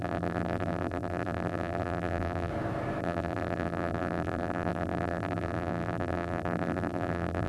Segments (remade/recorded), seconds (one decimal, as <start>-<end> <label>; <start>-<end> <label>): 0.0-2.5 remade; 2.5-3.0 recorded; 3.0-7.5 remade